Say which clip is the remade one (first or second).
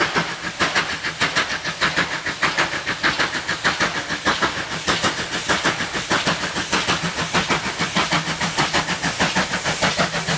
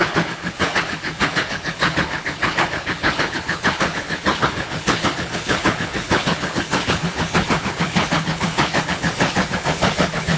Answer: second